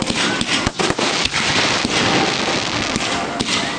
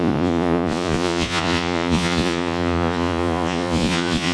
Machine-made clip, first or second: second